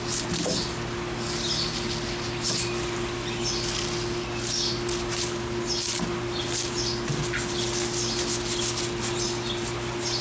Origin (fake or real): real